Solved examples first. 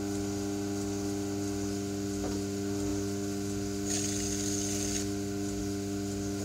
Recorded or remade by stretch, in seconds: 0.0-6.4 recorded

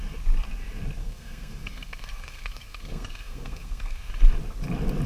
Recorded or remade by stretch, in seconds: 0.0-1.0 recorded; 1.0-4.1 remade; 4.1-5.1 recorded

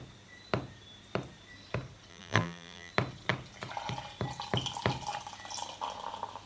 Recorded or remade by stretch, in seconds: 0.0-2.1 recorded; 2.1-2.9 remade; 2.9-6.5 recorded

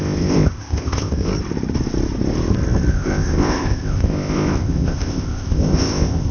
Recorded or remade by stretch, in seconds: 0.0-1.3 remade; 1.3-2.9 recorded; 2.9-6.3 remade